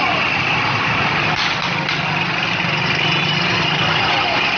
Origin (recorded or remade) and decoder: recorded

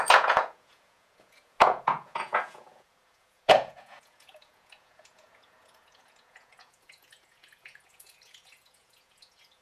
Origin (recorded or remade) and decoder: remade, vocoder, Vocos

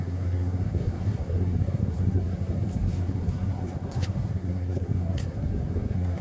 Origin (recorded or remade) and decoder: remade, codec, SNAC